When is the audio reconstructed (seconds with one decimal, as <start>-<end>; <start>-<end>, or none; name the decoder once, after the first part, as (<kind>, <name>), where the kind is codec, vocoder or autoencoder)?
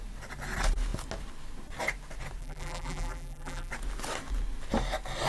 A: 2.4-3.7 (vocoder, BigVGAN v2)